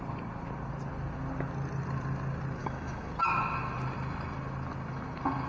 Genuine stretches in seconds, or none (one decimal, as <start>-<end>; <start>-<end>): 0.0-2.6; 3.1-5.5